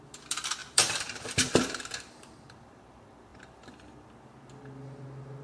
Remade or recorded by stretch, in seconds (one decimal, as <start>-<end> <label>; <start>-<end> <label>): 0.0-0.6 recorded; 0.6-2.9 remade; 2.9-5.4 recorded

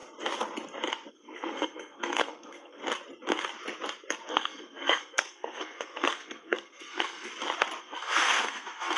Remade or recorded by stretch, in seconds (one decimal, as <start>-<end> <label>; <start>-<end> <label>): 0.0-1.1 recorded; 1.1-2.8 remade; 2.8-4.3 recorded; 4.3-7.3 remade; 7.3-7.8 recorded; 7.8-9.0 remade

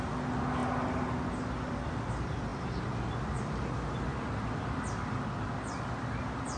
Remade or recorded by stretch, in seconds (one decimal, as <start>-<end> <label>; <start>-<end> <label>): 0.0-6.6 recorded